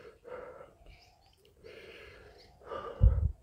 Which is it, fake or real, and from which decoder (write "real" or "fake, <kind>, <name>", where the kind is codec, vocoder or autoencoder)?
real